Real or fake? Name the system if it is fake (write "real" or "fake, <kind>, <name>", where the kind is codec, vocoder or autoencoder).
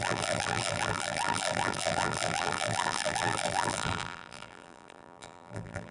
fake, vocoder, BigVGAN v2